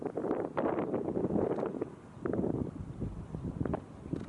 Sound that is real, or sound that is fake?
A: real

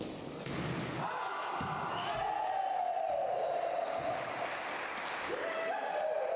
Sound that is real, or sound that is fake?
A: real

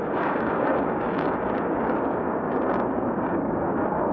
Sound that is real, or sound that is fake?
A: fake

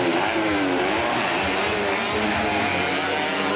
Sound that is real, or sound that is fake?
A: real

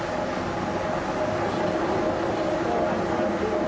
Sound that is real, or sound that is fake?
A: real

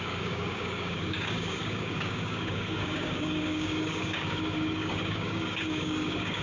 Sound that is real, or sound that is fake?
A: fake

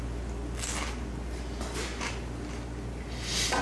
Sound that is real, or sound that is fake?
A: real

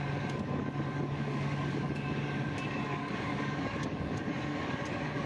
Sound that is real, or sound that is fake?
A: fake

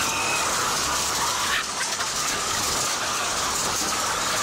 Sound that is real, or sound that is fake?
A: fake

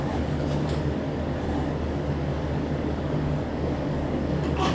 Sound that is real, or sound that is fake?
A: fake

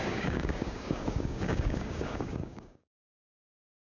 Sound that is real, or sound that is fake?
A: fake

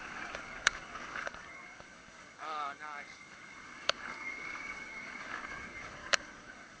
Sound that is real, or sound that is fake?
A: fake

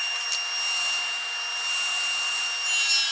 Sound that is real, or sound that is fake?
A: real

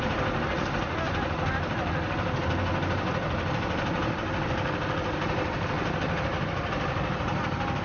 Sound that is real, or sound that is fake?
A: real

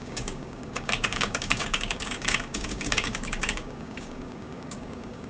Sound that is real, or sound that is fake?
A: fake